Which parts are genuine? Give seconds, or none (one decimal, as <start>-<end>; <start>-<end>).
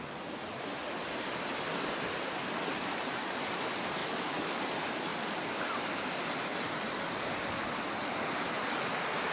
0.0-4.0; 4.6-9.3